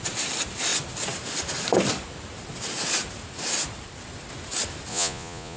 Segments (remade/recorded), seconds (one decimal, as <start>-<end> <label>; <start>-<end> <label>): 0.0-4.9 recorded; 4.9-5.6 remade